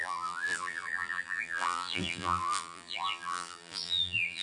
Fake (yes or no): yes